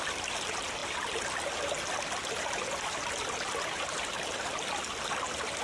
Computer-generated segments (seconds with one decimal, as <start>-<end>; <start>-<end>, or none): none